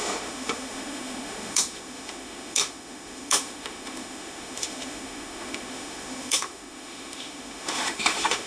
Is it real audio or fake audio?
fake